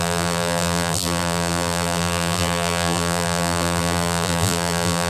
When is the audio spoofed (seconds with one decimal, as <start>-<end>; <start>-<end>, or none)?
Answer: 0.0-5.1